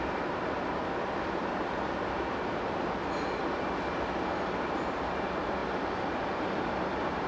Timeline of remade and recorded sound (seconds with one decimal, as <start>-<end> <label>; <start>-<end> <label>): 0.0-0.8 remade; 0.8-1.4 recorded; 1.4-3.0 remade; 3.0-4.6 recorded; 4.6-7.3 remade